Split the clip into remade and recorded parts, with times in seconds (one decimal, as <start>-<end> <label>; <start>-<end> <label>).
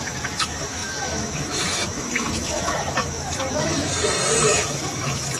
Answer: 0.0-3.9 remade; 3.9-4.5 recorded; 4.5-5.4 remade